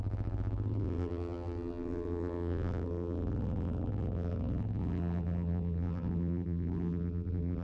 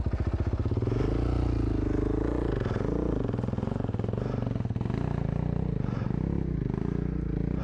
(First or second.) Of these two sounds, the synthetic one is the first